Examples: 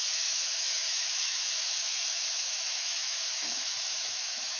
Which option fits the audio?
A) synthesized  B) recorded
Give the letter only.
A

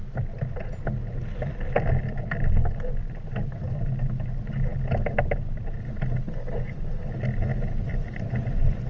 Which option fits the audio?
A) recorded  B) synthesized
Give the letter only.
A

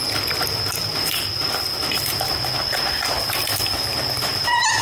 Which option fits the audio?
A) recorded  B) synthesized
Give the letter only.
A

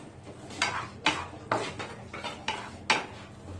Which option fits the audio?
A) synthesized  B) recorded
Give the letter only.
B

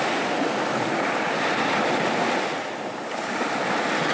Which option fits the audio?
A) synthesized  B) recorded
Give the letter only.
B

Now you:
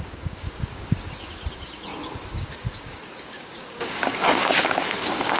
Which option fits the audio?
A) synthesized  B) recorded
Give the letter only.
A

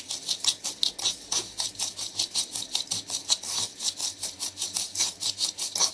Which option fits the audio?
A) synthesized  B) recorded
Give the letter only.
B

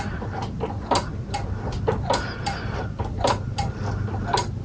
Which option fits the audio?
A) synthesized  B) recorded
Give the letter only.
B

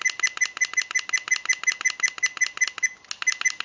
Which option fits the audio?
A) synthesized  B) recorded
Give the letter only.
B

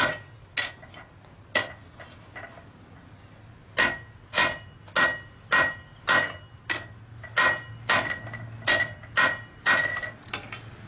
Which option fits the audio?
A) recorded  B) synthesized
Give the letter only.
A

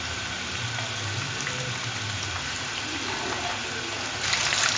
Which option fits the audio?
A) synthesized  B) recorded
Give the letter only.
B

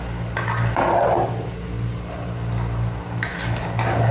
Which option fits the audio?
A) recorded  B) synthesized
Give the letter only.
A